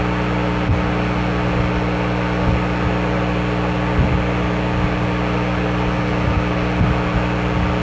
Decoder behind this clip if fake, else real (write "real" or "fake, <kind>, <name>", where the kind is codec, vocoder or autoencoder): real